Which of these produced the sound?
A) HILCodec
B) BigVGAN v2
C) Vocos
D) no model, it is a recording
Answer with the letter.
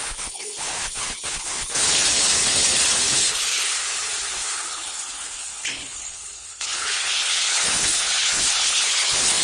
A